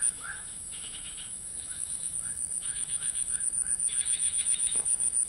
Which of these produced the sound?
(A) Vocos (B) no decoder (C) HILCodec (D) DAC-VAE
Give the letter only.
D